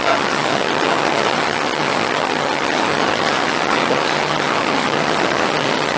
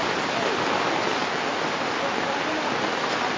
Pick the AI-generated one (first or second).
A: first